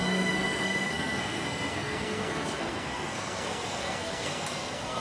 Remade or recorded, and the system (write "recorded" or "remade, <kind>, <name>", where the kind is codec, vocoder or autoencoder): remade, codec, SNAC